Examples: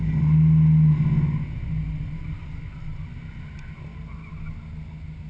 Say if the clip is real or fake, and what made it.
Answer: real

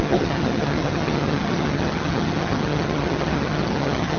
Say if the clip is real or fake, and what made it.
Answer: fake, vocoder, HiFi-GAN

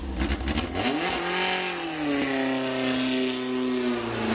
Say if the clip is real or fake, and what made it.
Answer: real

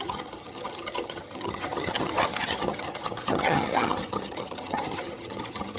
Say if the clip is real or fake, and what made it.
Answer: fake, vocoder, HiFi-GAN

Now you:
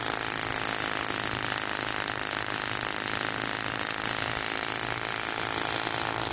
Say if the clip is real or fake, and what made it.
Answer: real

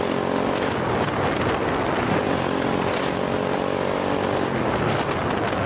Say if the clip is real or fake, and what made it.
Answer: real